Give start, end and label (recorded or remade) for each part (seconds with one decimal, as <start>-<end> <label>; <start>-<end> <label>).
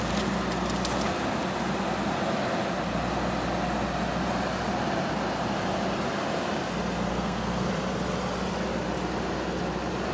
0.0-7.1 recorded; 7.1-7.7 remade; 7.7-10.1 recorded